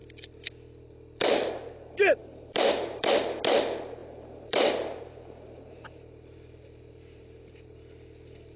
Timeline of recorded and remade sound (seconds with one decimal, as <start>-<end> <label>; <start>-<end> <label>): 0.0-2.2 recorded; 2.2-3.1 remade; 3.1-4.0 recorded; 4.0-8.6 remade